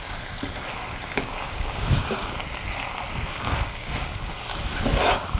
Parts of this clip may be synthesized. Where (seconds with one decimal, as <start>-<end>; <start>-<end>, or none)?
0.8-2.3; 3.3-4.3